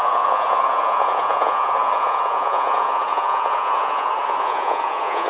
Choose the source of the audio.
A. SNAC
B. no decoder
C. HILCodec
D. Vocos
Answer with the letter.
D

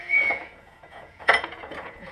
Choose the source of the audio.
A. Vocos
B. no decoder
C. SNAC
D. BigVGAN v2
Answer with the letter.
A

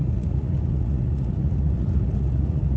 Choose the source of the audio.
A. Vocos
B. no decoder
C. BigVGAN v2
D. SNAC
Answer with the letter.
A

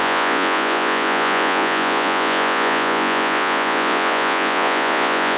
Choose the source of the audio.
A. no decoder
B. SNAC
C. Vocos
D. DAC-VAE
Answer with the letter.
C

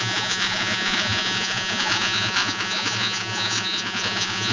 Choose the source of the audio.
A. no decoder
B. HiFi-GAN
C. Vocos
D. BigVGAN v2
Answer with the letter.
C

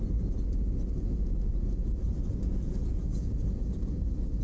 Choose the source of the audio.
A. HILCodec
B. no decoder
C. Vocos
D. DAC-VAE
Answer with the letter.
C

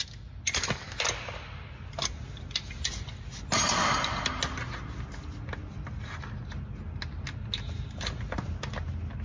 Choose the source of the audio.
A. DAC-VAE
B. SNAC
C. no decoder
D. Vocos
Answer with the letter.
C